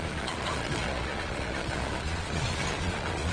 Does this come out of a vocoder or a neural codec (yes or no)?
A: yes